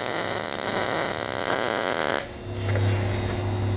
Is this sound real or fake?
real